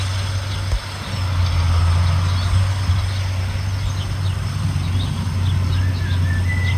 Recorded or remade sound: recorded